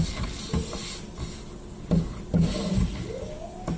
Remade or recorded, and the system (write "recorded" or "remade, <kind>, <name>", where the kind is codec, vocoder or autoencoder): recorded